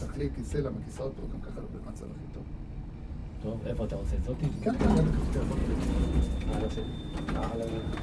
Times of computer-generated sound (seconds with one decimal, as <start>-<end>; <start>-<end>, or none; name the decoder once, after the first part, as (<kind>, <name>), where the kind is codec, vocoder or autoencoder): 1.2-2.1 (vocoder, WaveNeXt)